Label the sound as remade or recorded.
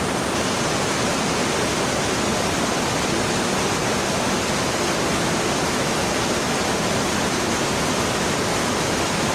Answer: recorded